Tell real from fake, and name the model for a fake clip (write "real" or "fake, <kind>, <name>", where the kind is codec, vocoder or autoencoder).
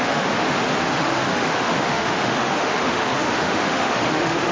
fake, autoencoder, DAC-VAE